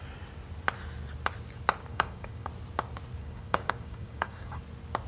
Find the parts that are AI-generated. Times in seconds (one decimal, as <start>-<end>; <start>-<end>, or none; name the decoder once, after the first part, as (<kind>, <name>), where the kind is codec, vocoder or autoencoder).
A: 1.9-2.5 (codec, DAC); 3.2-4.6